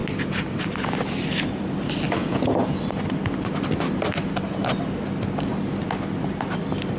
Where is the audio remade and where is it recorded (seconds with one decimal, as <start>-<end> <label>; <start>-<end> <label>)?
0.0-2.2 recorded; 2.2-2.8 remade; 2.8-7.0 recorded